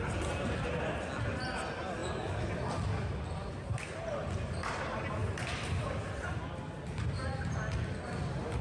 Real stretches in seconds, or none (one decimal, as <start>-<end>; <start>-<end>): 0.0-5.2; 6.3-8.6